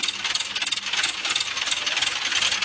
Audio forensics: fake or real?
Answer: real